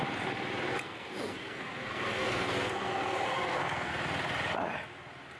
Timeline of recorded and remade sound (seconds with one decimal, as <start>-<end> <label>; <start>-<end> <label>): 0.0-0.7 recorded; 0.7-3.9 remade; 3.9-5.4 recorded